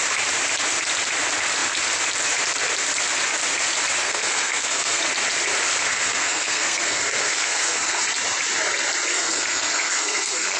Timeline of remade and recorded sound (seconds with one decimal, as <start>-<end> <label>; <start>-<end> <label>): 0.0-4.0 recorded; 4.0-5.0 remade; 5.0-5.8 recorded; 5.8-8.0 remade; 8.0-9.1 recorded; 9.1-10.6 remade